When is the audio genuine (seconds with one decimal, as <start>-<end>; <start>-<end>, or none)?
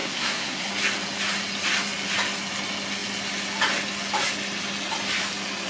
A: 0.7-5.7